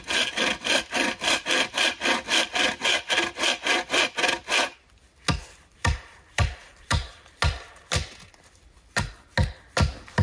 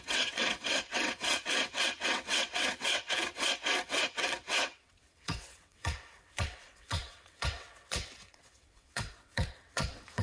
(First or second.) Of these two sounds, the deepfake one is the second